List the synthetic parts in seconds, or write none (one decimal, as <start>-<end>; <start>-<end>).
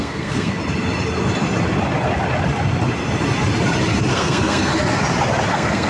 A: 0.0-0.6; 4.1-4.7; 5.5-5.9